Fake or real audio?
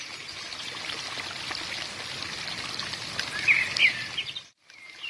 real